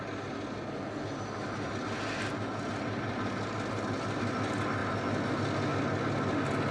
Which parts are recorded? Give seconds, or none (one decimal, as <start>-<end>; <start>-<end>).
0.0-6.7

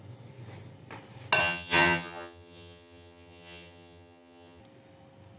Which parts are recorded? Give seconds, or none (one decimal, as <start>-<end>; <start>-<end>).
0.0-1.4; 4.6-5.4

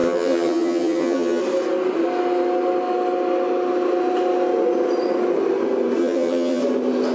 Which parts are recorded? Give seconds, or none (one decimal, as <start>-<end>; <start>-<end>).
1.4-6.0; 6.6-7.1

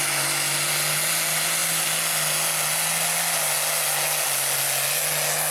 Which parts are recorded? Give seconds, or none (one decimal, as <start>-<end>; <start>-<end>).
0.0-5.5

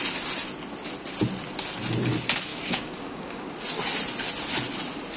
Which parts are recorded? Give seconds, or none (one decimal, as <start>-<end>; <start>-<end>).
0.0-2.5; 3.5-5.2

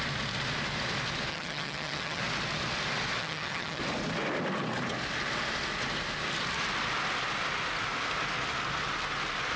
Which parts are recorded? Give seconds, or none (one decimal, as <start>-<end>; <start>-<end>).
0.0-1.3; 2.2-3.2; 3.8-9.6